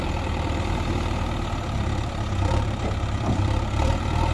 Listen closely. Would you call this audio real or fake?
fake